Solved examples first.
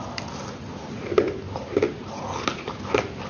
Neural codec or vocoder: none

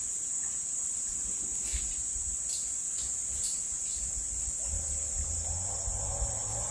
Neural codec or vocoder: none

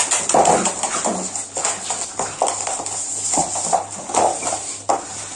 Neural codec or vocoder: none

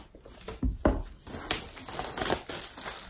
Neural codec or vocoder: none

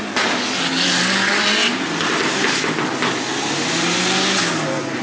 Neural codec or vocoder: none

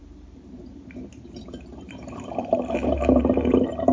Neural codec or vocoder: vocoder, BigVGAN v2